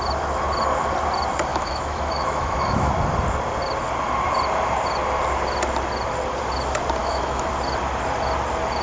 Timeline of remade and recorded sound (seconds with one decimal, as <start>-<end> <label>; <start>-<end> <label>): 0.0-1.5 recorded; 1.5-2.9 remade; 2.9-7.0 recorded; 7.0-7.5 remade; 7.5-8.8 recorded